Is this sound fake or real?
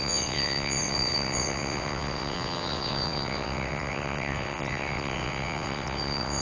fake